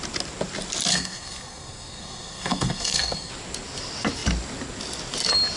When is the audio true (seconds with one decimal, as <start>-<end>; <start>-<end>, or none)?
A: 0.0-0.9; 3.3-5.6